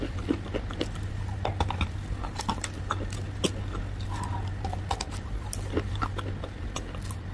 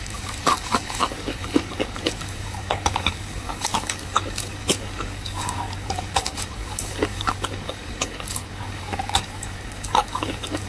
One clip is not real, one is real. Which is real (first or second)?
first